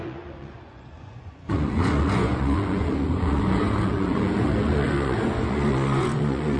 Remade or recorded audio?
remade